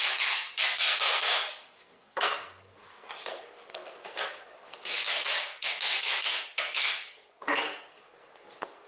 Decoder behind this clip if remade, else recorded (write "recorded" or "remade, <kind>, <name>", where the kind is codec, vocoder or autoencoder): remade, codec, SNAC